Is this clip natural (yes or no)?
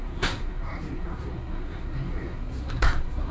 no